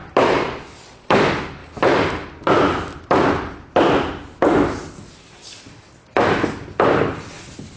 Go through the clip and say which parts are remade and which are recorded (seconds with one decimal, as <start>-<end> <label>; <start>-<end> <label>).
0.0-0.8 remade; 0.8-7.8 recorded